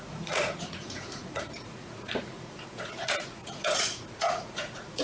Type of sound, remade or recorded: remade